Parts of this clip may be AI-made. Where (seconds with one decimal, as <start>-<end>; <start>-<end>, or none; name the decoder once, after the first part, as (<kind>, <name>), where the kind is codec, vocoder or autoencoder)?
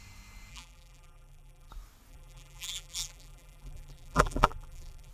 0.5-1.7 (vocoder, BigVGAN v2); 2.1-5.1